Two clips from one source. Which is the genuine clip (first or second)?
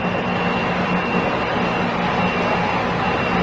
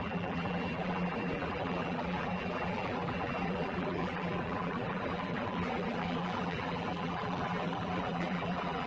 first